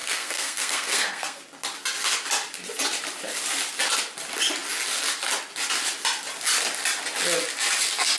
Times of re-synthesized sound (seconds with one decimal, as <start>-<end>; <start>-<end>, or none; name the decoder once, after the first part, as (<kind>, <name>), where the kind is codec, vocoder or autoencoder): 0.0-1.4 (codec, SNAC)